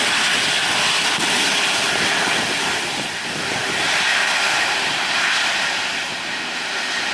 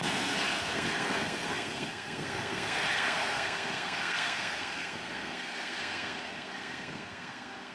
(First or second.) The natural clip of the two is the first